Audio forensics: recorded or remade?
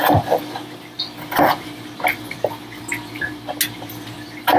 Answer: recorded